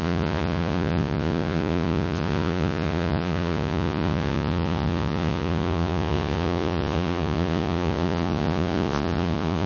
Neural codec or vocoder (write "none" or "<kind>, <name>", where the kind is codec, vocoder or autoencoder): vocoder, Vocos